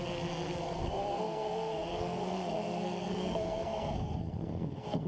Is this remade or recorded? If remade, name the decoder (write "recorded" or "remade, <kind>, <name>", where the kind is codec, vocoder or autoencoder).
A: remade, codec, SNAC